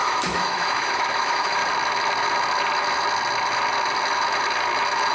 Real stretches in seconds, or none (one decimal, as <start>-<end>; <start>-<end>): 1.6-5.1